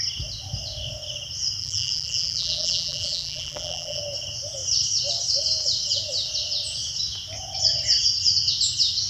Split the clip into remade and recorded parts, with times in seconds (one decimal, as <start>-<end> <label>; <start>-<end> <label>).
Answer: 0.0-1.6 recorded; 1.6-4.0 remade; 4.0-9.1 recorded